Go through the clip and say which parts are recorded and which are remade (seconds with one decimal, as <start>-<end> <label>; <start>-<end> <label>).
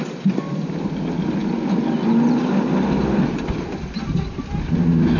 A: 0.0-5.2 recorded